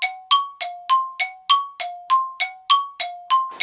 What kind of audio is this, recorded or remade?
recorded